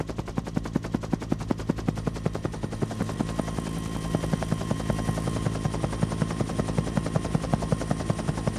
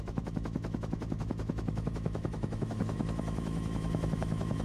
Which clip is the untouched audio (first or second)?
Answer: first